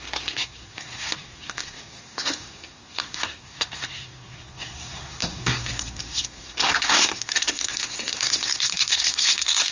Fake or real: fake